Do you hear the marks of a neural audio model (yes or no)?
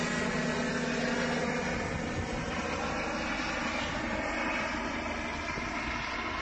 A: no